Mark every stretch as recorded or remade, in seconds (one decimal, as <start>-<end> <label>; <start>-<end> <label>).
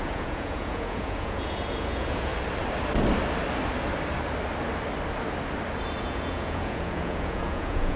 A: 0.0-2.3 remade; 2.3-6.0 recorded; 6.0-8.0 remade